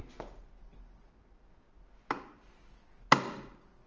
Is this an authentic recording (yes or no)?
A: yes